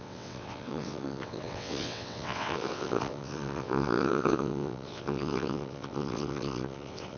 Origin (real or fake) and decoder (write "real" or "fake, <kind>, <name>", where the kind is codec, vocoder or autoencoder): fake, vocoder, WaveNeXt